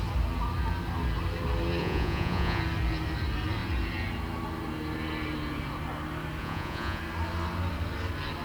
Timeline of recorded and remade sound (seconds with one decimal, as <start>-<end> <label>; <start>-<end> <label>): 0.0-1.8 recorded; 1.8-2.6 remade; 2.6-6.4 recorded; 6.4-7.0 remade; 7.0-8.4 recorded